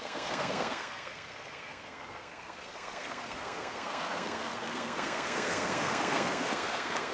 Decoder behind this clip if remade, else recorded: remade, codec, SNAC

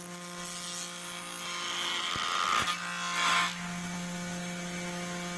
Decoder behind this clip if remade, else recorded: recorded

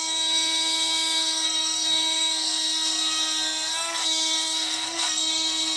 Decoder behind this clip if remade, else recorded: remade, codec, SNAC